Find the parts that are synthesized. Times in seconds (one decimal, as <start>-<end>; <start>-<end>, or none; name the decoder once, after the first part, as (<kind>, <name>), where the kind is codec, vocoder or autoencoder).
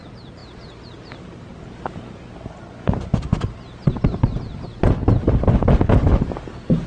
none